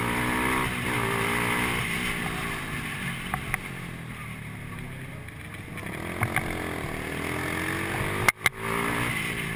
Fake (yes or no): no